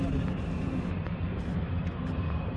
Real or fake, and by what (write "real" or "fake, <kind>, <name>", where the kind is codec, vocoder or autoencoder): real